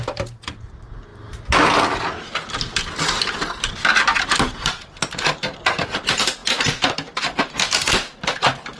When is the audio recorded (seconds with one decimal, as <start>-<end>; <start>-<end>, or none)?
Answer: 1.1-3.9